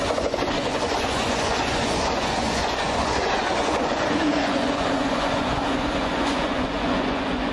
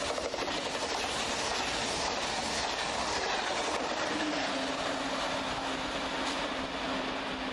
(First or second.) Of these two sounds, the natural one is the second